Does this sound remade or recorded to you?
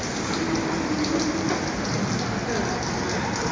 recorded